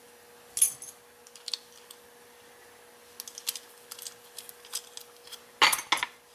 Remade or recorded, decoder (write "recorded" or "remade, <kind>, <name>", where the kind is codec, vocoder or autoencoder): recorded